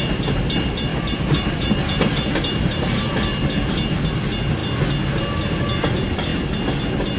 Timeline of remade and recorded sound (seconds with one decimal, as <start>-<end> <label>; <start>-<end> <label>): 0.0-0.9 recorded; 0.9-3.2 remade; 3.2-7.2 recorded